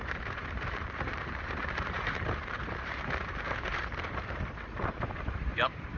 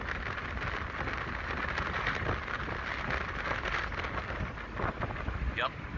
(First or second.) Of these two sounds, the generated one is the first